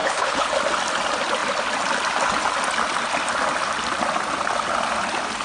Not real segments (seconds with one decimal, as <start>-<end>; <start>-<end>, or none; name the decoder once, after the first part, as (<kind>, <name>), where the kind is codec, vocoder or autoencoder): 0.0-0.5 (codec, HILCodec)

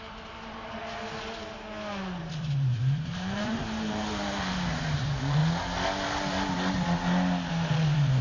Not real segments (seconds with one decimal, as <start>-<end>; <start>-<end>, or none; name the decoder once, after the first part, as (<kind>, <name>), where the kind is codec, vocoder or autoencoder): 0.0-0.8 (vocoder, BigVGAN v2); 2.2-5.4; 7.5-8.2

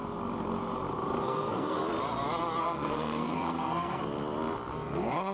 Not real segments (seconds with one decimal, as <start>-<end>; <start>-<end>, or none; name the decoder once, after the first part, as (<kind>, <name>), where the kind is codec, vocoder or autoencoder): 1.2-1.8 (codec, SNAC); 2.6-4.0; 4.7-5.3

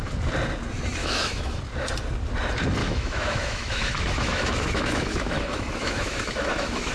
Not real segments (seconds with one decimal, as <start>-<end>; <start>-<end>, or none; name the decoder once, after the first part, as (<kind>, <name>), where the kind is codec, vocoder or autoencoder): 1.0-1.6 (autoencoder, DAC-VAE); 2.8-6.9

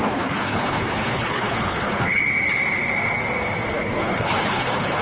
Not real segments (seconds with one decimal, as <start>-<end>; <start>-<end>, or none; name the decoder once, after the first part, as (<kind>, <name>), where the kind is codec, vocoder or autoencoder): 0.0-2.2 (codec, HILCodec); 3.8-5.0

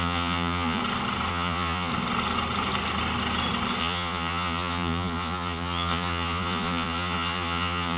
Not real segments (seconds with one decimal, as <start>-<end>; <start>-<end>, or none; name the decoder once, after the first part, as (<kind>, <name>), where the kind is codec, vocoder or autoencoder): 0.0-0.8 (vocoder, Vocos); 1.3-1.9; 3.8-8.0

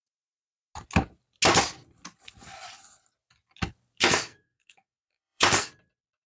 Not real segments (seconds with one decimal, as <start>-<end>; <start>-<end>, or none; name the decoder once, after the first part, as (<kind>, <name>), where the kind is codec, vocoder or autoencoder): 4.0-5.7 (codec, SNAC)